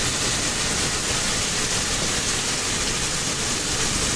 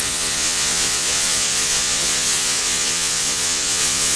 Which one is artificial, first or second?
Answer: second